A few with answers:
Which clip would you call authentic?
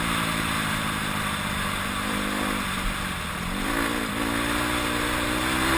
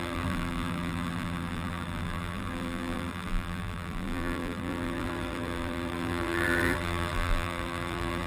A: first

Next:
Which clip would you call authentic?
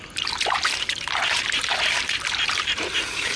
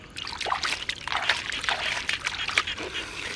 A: second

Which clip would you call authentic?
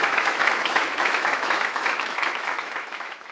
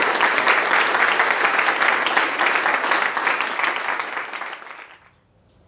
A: second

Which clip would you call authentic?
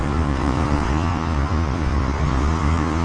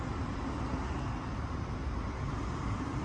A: second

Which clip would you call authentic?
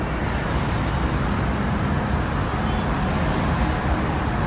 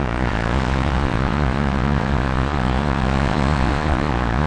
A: first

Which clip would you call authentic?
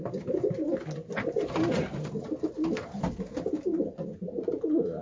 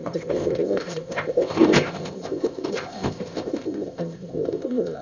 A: first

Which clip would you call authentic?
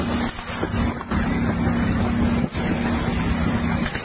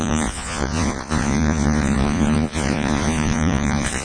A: first